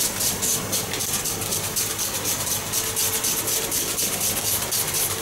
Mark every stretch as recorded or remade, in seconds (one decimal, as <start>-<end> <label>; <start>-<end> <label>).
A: 0.0-5.2 recorded